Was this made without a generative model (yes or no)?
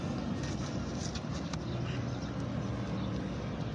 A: yes